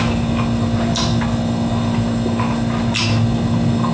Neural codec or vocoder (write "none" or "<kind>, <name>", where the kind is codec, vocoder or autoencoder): none